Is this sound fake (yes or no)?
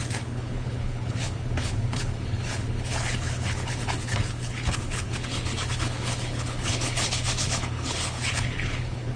yes